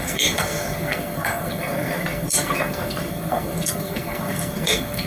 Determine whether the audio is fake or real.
fake